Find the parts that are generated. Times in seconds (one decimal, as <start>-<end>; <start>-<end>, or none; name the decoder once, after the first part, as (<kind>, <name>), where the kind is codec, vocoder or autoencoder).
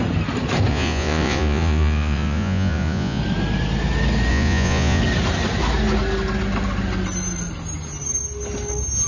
0.7-3.2 (vocoder, Vocos); 4.3-5.0